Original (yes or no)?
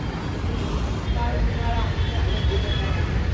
yes